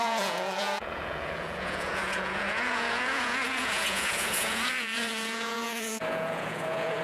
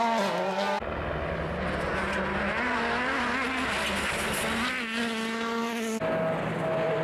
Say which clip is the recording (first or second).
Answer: second